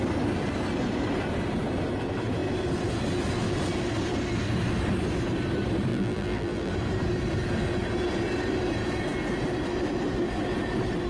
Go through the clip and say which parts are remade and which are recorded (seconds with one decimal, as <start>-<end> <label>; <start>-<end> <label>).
0.0-5.9 recorded; 5.9-6.7 remade; 6.7-11.1 recorded

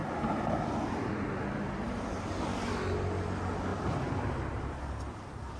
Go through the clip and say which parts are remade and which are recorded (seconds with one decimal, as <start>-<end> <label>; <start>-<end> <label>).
0.0-1.1 remade; 1.1-3.7 recorded; 3.7-4.7 remade; 4.7-5.6 recorded